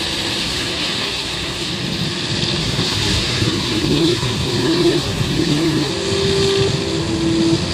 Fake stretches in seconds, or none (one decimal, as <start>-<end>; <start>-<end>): 0.4-1.7; 2.6-5.9